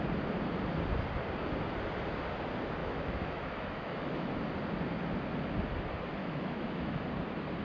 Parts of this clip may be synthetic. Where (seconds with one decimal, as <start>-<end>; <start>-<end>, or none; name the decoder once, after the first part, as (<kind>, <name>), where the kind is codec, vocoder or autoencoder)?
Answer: 2.8-4.3 (autoencoder, DAC-VAE); 6.2-7.0